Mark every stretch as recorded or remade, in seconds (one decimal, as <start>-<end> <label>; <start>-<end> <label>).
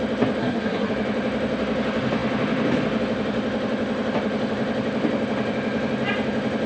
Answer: 0.0-0.4 recorded; 0.4-0.9 remade; 0.9-6.7 recorded